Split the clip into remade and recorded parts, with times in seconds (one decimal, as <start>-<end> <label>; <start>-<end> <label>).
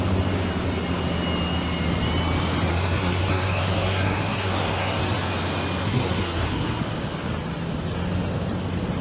0.0-2.7 recorded; 2.7-5.0 remade; 5.0-5.8 recorded; 5.8-6.8 remade; 6.8-9.0 recorded